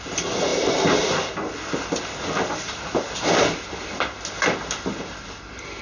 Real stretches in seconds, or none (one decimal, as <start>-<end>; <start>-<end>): 0.0-5.8